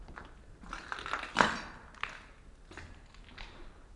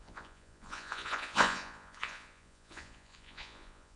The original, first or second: first